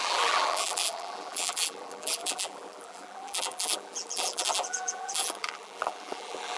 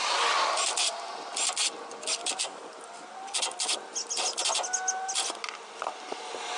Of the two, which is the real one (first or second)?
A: second